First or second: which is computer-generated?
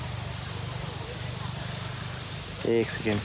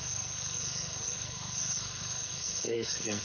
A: second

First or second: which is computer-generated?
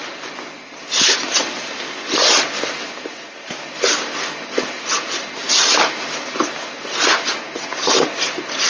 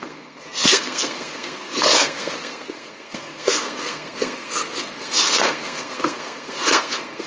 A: second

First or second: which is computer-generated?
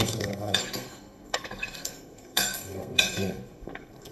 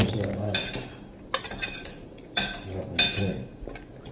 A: first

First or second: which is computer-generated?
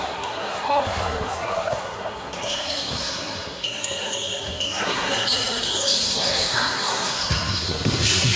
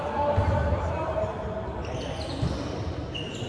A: first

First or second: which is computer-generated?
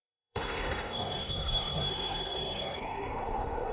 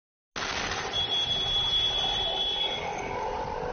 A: first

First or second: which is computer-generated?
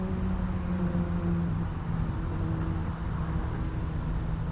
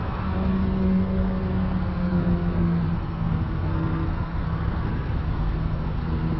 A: second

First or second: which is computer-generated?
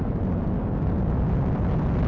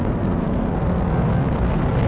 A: second